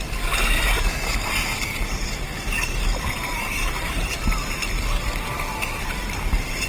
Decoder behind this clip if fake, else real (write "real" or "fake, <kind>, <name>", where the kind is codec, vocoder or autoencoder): real